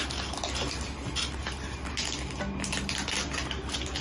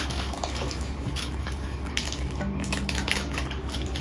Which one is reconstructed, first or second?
second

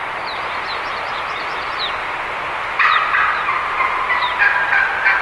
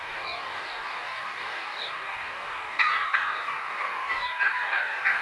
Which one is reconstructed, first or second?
second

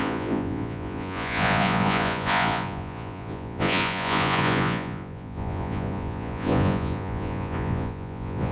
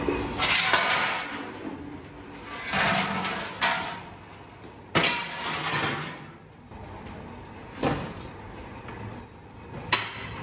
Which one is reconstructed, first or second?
first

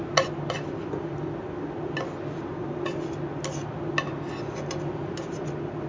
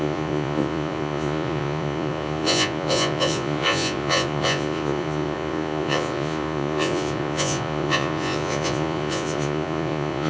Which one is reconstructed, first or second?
second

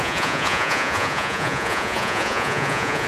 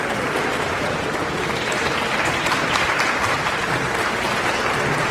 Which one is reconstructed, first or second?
first